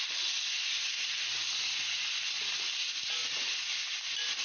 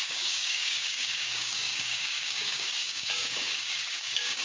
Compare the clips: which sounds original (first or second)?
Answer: first